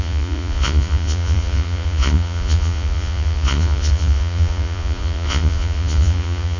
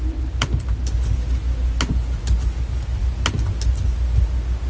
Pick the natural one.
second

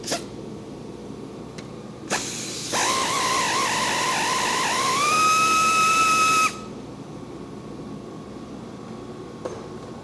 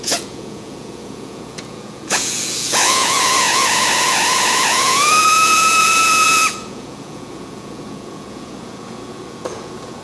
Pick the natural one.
first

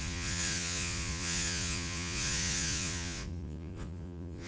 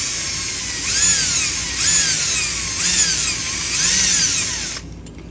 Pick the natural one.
second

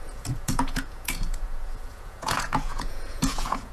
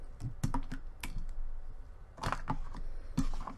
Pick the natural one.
second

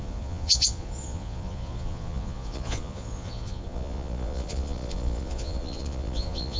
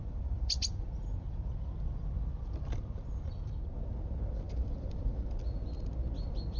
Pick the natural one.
second